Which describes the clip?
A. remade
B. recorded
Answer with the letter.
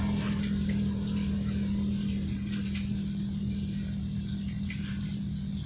B